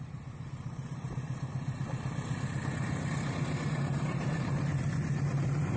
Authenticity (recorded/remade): remade